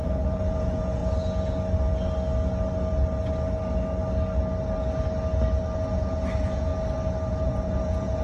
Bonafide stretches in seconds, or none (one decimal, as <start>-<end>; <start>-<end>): 1.0-5.9; 6.7-7.3